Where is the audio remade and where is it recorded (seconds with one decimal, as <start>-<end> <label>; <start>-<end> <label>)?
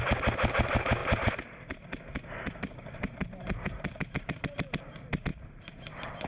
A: 0.0-1.0 recorded; 1.0-4.8 remade; 4.8-5.3 recorded; 5.3-6.3 remade